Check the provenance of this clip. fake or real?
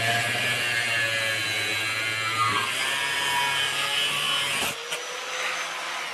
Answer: real